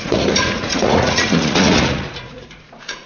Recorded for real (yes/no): no